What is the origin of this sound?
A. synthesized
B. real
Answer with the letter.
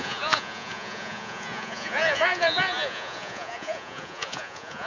A